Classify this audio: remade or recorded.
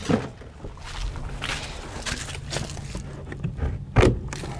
recorded